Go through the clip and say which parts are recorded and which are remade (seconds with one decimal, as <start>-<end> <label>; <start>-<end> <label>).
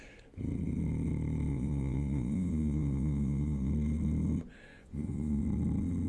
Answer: 0.0-1.5 recorded; 1.5-3.7 remade; 3.7-4.7 recorded; 4.7-5.4 remade; 5.4-6.1 recorded